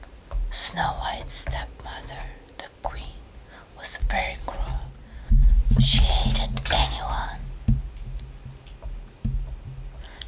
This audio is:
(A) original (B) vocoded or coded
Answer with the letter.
A